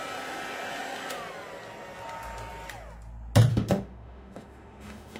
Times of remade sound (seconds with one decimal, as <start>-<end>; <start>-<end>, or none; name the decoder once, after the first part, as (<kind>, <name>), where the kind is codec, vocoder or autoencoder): 3.5-5.2 (autoencoder, DAC-VAE)